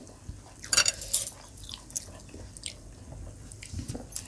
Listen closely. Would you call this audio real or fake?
real